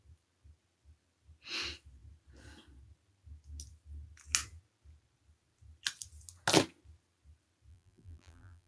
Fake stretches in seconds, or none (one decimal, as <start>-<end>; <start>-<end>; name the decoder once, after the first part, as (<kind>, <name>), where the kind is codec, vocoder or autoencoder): 7.7-8.7 (vocoder, BigVGAN v2)